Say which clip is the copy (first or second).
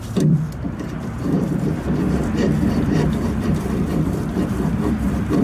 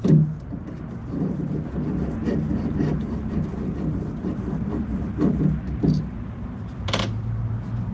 first